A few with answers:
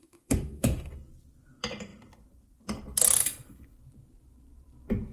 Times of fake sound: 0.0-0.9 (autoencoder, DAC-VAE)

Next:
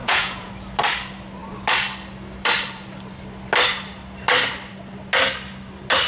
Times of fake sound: 0.0-0.5 (vocoder, Vocos)

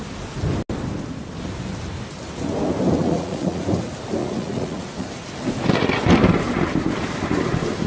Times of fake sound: 3.0-3.6 (vocoder, Vocos); 4.2-5.1

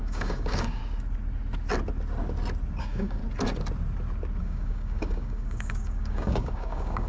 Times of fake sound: 0.0-0.8 (codec, DAC); 2.8-3.2; 4.4-7.1

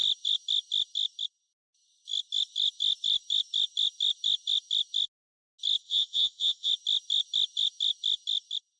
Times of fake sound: 5.8-6.7 (vocoder, WaveNeXt)

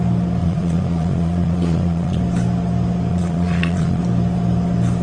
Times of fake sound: 0.4-2.2 (vocoder, Vocos); 3.1-4.0

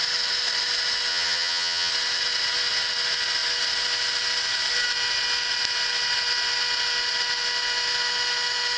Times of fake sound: 1.1-1.9 (vocoder, HiFi-GAN)